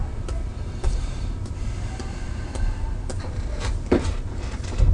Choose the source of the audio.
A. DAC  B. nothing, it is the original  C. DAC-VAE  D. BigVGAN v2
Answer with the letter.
D